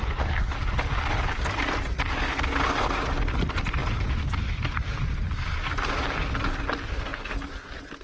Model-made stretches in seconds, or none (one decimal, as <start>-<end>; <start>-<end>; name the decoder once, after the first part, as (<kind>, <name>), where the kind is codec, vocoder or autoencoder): none